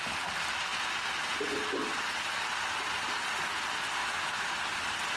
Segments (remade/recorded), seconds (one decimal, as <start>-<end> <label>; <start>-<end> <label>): 0.0-4.0 recorded; 4.0-4.6 remade; 4.6-5.2 recorded